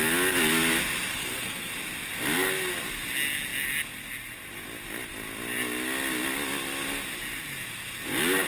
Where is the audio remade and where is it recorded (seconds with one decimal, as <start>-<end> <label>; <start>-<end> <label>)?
0.0-1.1 recorded; 1.1-1.7 remade; 1.7-8.5 recorded